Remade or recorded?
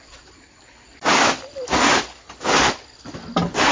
recorded